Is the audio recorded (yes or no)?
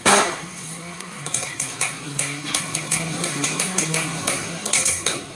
no